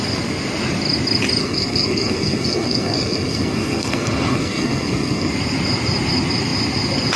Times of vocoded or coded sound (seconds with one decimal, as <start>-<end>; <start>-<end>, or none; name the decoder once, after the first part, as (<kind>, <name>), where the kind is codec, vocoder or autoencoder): 1.4-5.3 (codec, SNAC)

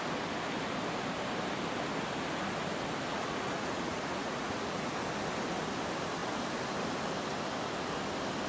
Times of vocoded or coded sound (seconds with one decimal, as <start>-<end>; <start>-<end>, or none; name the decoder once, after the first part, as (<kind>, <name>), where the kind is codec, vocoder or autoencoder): 3.1-4.9 (vocoder, Vocos)